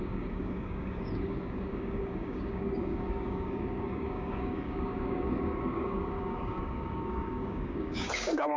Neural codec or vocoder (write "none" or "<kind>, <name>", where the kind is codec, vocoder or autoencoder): codec, DAC